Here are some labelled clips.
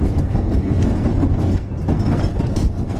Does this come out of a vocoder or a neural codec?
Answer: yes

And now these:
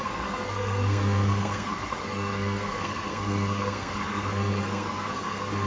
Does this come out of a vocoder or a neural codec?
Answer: yes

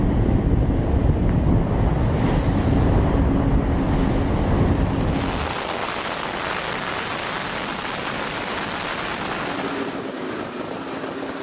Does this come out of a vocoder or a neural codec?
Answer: no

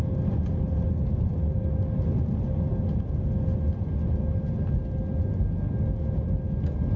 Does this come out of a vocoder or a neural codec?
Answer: no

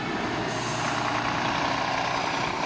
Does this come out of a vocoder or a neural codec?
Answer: no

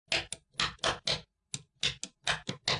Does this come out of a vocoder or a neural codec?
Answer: no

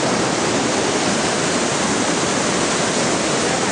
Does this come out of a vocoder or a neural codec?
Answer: no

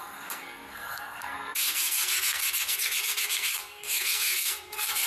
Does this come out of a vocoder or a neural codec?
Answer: yes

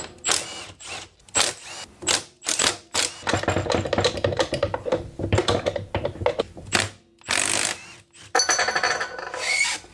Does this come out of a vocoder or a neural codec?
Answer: no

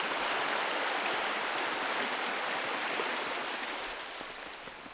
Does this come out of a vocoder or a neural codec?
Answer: no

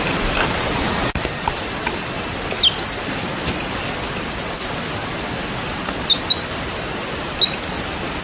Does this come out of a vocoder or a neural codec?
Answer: no